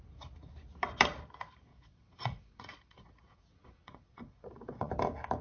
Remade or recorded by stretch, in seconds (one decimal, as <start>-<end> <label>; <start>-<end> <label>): 0.0-1.7 recorded; 1.7-4.9 remade; 4.9-5.4 recorded